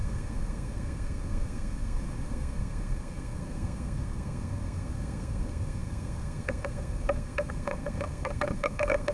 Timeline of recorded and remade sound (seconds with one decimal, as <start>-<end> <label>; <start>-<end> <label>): 0.0-9.1 remade